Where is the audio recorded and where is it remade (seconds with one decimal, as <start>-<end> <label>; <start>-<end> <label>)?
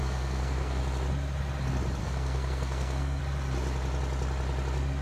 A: 0.0-0.8 remade; 0.8-2.0 recorded; 2.0-3.2 remade; 3.2-5.0 recorded